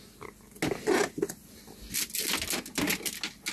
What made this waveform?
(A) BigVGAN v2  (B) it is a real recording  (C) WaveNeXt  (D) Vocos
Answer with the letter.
B